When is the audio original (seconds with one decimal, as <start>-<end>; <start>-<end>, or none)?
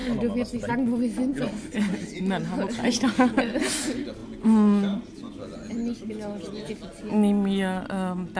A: 0.0-8.4